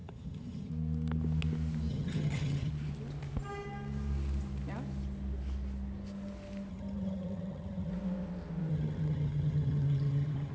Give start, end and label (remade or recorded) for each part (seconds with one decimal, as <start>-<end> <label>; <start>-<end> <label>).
0.0-0.7 remade; 0.7-1.9 recorded; 1.9-2.7 remade; 2.7-6.7 recorded; 6.7-7.9 remade; 7.9-8.7 recorded; 8.7-10.5 remade